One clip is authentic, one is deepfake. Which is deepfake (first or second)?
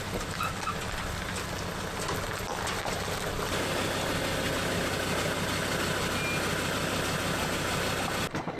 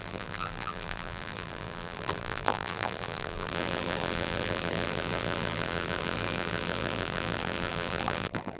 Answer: second